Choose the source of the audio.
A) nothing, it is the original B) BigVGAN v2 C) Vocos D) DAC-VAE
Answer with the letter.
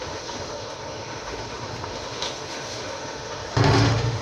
D